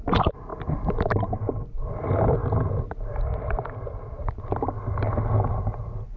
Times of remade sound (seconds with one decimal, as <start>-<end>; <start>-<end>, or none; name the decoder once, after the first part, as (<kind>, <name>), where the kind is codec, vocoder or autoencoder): none